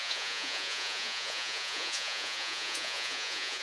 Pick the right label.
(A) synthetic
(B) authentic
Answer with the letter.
A